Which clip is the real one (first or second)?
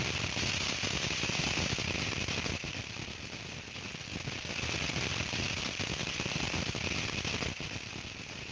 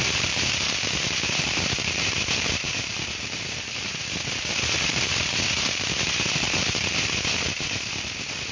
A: first